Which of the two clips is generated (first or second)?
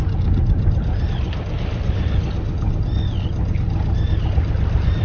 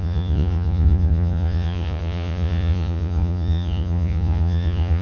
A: second